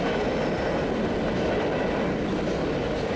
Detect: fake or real real